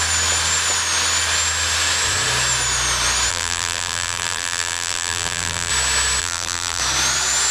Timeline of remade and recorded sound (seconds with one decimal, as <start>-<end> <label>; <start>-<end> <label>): 0.0-3.3 recorded; 3.3-5.7 remade; 5.7-6.2 recorded; 6.2-6.8 remade; 6.8-7.5 recorded